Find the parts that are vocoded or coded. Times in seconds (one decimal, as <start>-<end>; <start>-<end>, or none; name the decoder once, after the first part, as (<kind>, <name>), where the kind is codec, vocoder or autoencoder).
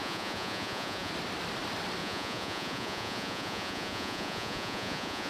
0.0-1.1 (vocoder, Vocos); 2.0-5.3